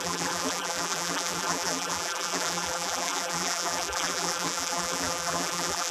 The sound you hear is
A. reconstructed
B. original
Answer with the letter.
A